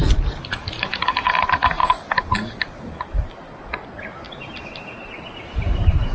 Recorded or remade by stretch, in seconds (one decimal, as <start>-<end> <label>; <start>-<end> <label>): 0.0-1.1 recorded; 1.1-1.8 remade; 1.8-5.5 recorded; 5.5-6.1 remade